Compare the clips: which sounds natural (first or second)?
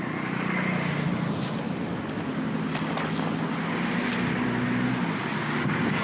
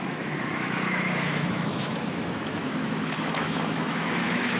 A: first